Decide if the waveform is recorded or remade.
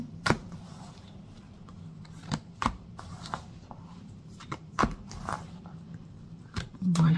remade